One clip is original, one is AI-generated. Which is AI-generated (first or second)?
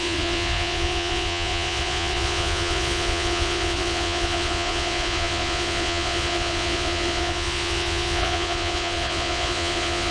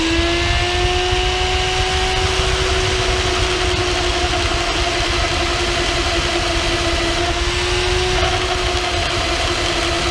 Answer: first